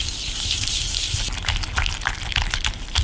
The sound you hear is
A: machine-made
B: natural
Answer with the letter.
B